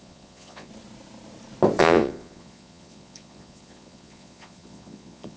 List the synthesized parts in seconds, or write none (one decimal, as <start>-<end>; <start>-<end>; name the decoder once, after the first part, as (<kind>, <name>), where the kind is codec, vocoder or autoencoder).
0.0-0.7 (vocoder, Vocos); 1.8-5.4